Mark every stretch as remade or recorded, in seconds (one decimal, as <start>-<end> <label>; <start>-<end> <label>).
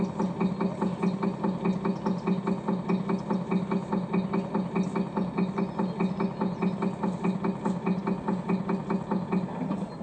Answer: 0.0-10.0 recorded